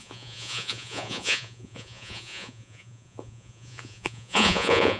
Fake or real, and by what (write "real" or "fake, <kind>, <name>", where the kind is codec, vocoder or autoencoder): fake, vocoder, Vocos